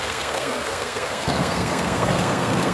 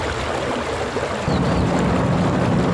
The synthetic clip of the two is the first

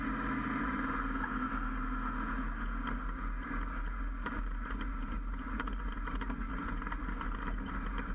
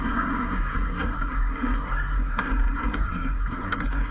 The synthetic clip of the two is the second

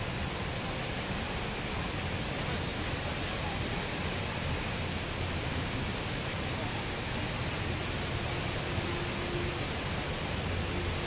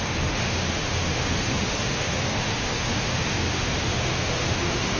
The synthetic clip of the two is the second